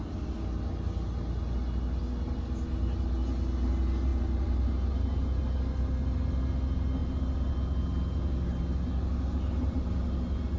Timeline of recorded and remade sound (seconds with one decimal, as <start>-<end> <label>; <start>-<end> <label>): 0.0-10.6 recorded